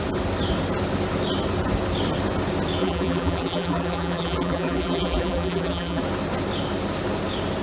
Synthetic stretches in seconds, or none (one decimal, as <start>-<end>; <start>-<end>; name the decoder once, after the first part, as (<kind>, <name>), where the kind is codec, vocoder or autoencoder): 2.8-6.0 (vocoder, BigVGAN v2)

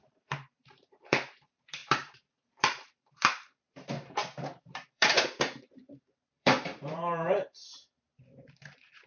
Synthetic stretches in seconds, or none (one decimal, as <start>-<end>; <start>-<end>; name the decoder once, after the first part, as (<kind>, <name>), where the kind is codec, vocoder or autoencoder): 0.0-9.1 (vocoder, BigVGAN v2)

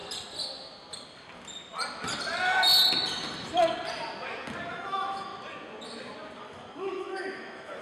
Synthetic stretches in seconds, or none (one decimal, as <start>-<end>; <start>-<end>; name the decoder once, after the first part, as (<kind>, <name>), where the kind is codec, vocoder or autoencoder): 4.7-5.3 (autoencoder, DAC-VAE); 6.4-7.8

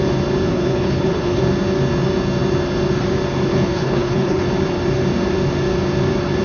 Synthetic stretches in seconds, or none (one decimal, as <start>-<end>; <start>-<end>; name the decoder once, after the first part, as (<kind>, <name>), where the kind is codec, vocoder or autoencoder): 0.5-1.4 (codec, HILCodec); 3.5-4.5

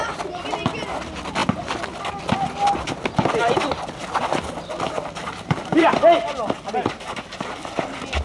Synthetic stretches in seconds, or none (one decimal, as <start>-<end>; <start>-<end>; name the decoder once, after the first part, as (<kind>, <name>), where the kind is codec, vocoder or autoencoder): 1.4-6.0 (vocoder, BigVGAN v2)

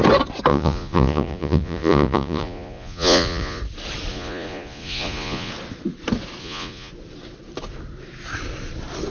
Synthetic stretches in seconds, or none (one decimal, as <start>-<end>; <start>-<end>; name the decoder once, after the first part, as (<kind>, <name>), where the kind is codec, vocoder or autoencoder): 0.5-3.6 (vocoder, Vocos); 4.1-5.5; 6.4-6.9